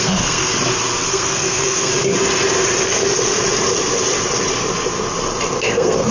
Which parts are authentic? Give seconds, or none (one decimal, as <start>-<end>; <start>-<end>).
0.5-1.1; 1.9-5.6